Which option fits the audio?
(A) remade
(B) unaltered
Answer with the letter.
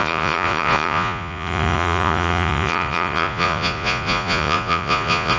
A